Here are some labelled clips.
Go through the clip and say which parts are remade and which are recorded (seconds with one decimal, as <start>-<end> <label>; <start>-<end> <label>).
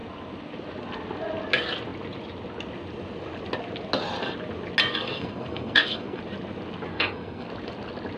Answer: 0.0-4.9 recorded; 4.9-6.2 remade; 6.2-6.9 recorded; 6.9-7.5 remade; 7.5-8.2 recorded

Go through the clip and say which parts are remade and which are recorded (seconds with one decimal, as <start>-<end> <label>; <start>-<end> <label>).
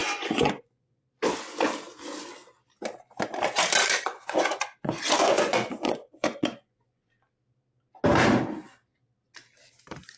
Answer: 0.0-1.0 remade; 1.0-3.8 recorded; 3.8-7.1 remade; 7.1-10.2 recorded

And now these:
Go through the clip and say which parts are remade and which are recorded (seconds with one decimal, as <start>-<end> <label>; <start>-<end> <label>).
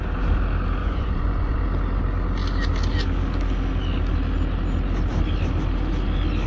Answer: 0.0-0.8 recorded; 0.8-1.6 remade; 1.6-6.5 recorded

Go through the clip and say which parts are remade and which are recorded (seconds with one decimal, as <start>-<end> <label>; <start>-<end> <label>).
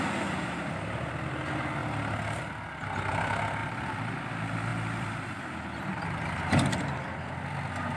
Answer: 0.0-4.7 recorded; 4.7-5.4 remade; 5.4-8.0 recorded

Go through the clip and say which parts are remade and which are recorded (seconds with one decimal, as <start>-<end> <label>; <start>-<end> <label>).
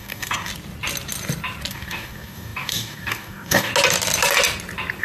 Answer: 0.0-0.5 remade; 0.5-1.7 recorded; 1.7-3.7 remade; 3.7-5.0 recorded